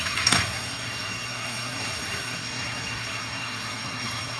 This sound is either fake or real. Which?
fake